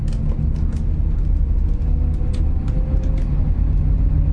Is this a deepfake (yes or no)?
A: no